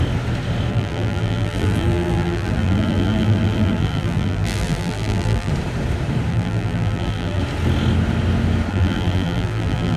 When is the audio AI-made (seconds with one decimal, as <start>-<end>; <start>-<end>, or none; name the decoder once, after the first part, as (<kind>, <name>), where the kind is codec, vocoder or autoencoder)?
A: 0.7-5.5 (vocoder, BigVGAN v2); 6.3-7.4; 8.7-10.0